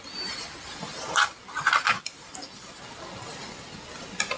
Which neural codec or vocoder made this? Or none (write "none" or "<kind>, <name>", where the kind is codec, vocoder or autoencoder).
none